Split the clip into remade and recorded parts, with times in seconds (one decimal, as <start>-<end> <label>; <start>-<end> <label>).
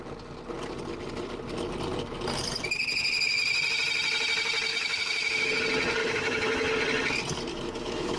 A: 0.0-4.7 recorded; 4.7-5.5 remade; 5.5-6.0 recorded; 6.0-6.7 remade; 6.7-7.5 recorded; 7.5-8.2 remade